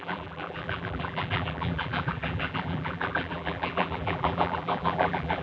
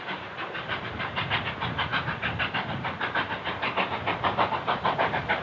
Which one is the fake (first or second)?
first